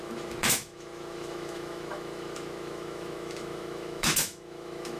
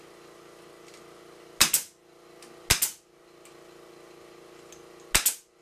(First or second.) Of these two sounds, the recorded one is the second